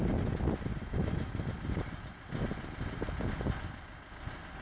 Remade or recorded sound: recorded